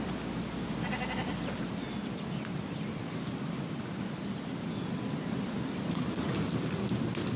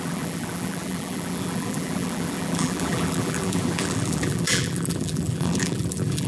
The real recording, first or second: first